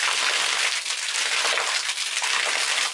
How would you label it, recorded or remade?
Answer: recorded